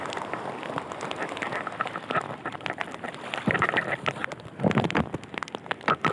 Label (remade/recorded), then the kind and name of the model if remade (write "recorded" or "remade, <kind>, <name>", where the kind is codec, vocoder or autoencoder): recorded